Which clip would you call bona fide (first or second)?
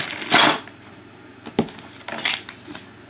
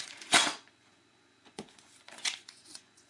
first